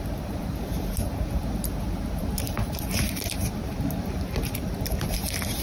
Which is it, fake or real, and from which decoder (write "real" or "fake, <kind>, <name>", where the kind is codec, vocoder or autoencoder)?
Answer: fake, vocoder, BigVGAN v2